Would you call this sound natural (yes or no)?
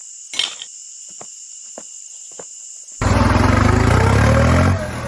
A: yes